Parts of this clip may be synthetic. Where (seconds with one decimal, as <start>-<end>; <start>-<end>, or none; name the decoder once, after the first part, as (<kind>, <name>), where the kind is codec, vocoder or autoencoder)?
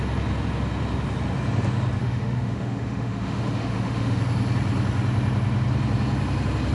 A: 2.0-4.2 (autoencoder, DAC-VAE)